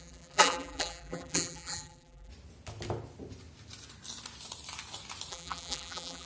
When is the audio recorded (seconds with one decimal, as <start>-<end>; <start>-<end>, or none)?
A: 2.3-5.3